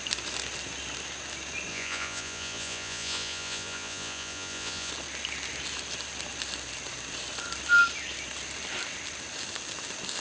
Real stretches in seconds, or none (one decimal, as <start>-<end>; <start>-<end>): 0.0-1.7; 4.9-10.2